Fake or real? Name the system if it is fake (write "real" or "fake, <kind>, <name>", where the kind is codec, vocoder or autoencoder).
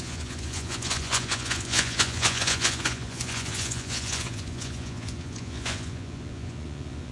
fake, vocoder, Vocos